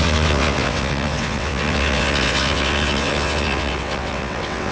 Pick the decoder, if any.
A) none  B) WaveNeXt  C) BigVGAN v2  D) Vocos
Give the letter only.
B